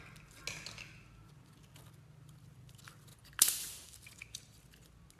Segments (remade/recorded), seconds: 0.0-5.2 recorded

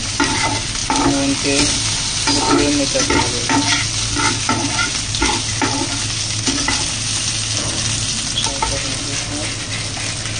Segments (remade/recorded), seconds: 0.0-10.4 recorded

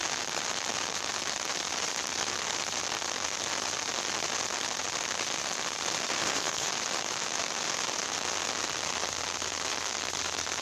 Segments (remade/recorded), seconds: 0.0-6.2 recorded; 6.2-6.7 remade; 6.7-10.6 recorded

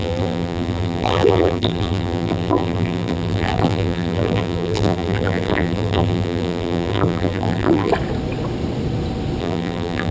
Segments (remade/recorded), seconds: 0.0-7.9 remade; 7.9-9.4 recorded; 9.4-10.1 remade

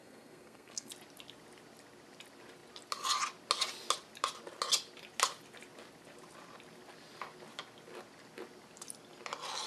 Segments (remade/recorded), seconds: 0.0-0.9 remade; 0.9-9.7 recorded